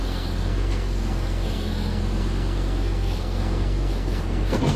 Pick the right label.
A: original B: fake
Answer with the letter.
B